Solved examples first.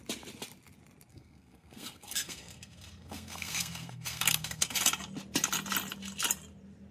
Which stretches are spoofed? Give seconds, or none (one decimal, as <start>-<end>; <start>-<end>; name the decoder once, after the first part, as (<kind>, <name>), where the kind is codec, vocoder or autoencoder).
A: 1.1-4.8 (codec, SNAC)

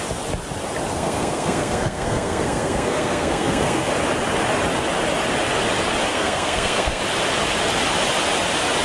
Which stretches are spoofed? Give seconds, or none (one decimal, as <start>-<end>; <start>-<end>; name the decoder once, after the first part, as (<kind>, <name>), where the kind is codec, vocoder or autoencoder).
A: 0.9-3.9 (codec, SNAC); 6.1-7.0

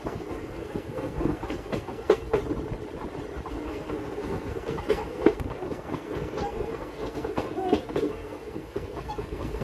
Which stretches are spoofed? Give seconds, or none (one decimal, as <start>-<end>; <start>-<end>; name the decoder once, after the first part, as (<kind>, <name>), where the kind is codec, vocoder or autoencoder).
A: 0.0-2.4 (codec, SNAC); 3.5-9.6

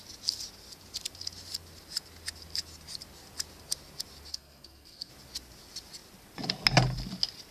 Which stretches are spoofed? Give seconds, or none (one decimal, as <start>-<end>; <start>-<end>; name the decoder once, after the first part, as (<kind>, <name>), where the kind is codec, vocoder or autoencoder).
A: 4.3-5.1 (codec, SNAC)

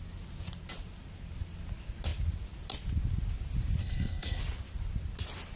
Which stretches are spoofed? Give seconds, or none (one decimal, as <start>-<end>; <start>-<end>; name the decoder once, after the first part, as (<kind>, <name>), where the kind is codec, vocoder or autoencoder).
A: 3.8-4.4 (codec, SNAC)

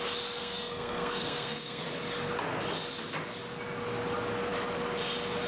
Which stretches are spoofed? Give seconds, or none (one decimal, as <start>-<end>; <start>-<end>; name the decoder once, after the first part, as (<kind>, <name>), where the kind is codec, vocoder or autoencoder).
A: 0.4-1.8 (codec, SNAC)

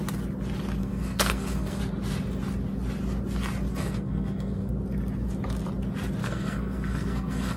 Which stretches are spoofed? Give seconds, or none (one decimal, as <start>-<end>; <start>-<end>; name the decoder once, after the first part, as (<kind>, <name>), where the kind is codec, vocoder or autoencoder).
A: 0.8-1.8 (codec, SNAC); 3.7-4.7; 6.2-7.6